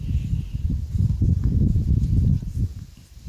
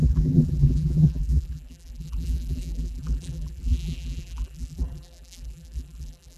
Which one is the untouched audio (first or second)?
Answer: first